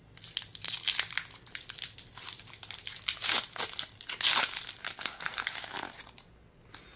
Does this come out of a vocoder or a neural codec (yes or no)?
no